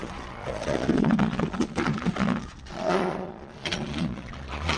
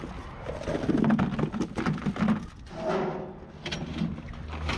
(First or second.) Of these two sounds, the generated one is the first